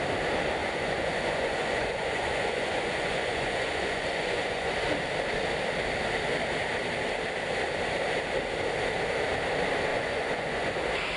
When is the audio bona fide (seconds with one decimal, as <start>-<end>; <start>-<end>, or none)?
0.0-0.6; 4.7-9.9; 10.7-11.2